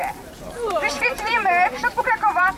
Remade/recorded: remade